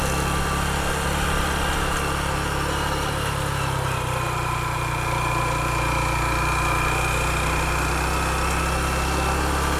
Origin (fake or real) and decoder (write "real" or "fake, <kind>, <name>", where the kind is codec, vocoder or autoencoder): real